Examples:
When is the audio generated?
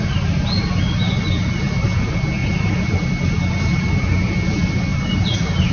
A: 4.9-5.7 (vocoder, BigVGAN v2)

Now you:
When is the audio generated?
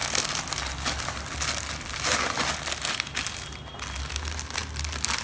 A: none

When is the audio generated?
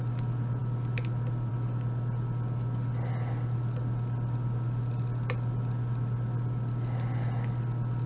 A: none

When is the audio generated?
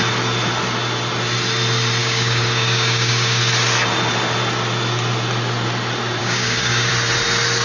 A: 2.0-3.4 (codec, DAC); 6.2-6.9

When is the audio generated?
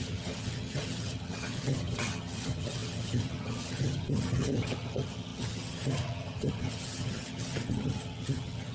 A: 0.0-8.7 (vocoder, HiFi-GAN)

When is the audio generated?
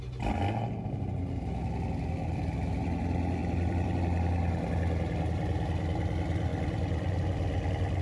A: 3.4-4.0 (vocoder, BigVGAN v2); 6.5-7.2